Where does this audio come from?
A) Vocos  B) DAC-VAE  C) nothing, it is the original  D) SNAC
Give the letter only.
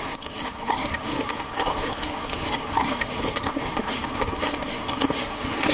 D